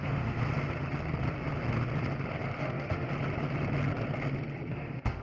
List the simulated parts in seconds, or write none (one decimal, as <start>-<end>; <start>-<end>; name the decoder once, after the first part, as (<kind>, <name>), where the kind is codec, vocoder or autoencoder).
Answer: 0.0-0.4 (autoencoder, DAC-VAE); 2.6-3.1; 4.7-5.2